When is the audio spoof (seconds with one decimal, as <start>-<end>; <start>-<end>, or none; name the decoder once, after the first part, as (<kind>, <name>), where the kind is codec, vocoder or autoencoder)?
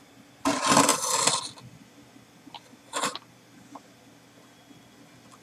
none